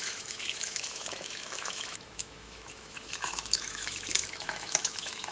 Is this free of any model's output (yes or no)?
no